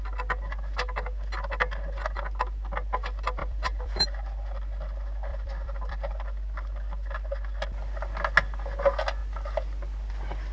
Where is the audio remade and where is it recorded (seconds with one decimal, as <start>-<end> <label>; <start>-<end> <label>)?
0.0-3.4 recorded; 3.4-4.0 remade; 4.0-5.3 recorded; 5.3-6.1 remade; 6.1-10.5 recorded